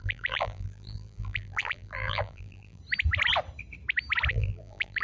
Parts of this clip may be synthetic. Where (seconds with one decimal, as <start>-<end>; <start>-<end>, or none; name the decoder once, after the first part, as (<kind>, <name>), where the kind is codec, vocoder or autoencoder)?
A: 0.0-2.8 (vocoder, BigVGAN v2); 4.3-5.0